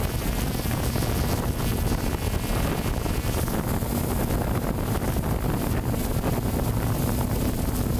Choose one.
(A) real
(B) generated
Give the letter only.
A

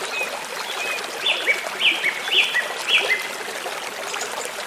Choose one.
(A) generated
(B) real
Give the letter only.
B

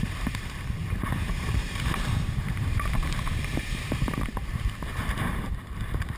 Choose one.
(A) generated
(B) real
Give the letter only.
A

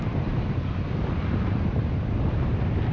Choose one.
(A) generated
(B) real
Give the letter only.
A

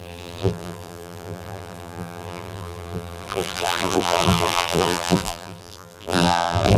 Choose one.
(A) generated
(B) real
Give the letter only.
A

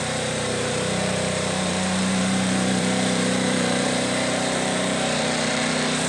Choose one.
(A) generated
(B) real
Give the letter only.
A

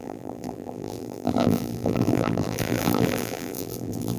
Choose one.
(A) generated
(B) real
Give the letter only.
A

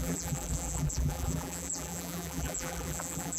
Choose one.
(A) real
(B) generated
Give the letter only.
B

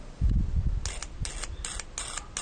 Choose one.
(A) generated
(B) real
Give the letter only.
B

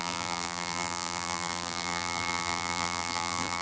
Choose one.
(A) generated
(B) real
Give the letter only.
A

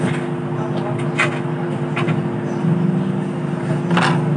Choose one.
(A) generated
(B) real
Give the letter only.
B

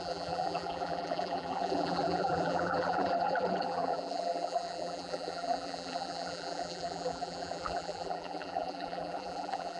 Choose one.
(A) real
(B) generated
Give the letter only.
B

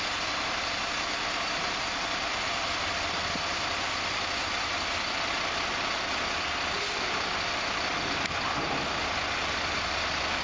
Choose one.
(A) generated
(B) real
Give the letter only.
B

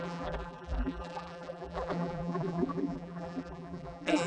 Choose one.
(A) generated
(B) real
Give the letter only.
A